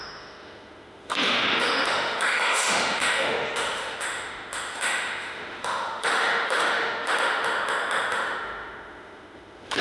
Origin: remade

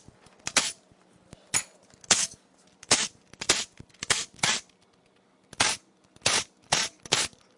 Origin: recorded